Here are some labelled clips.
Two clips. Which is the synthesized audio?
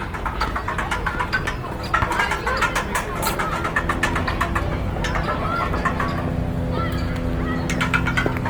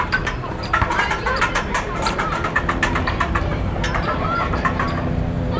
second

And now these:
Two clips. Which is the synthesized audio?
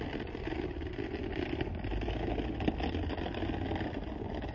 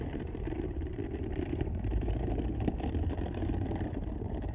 second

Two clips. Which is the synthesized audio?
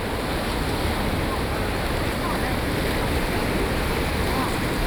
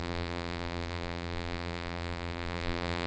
second